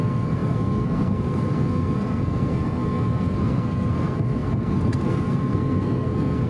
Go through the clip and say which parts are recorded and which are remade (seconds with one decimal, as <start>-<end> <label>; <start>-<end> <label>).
0.0-6.5 remade

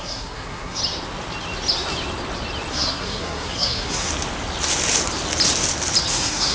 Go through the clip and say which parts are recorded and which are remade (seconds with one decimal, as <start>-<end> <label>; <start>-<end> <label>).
0.0-0.8 remade; 0.8-2.7 recorded; 2.7-4.1 remade; 4.1-6.1 recorded; 6.1-6.5 remade

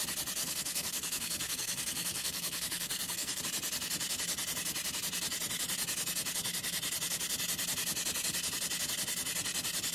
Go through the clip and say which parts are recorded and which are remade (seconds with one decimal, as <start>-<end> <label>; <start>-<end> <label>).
0.0-0.4 recorded; 0.4-3.4 remade; 3.4-9.9 recorded

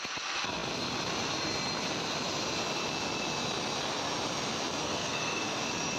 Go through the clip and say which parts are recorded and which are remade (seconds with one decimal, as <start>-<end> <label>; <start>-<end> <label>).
0.0-4.8 recorded; 4.8-5.6 remade; 5.6-6.0 recorded